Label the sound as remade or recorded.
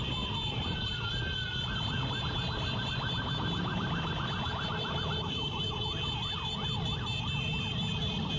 remade